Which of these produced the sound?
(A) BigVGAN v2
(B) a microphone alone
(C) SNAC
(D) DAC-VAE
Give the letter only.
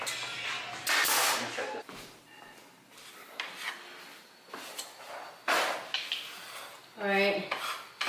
B